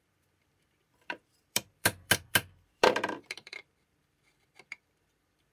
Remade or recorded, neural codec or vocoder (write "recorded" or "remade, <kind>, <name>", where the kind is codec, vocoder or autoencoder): remade, vocoder, BigVGAN v2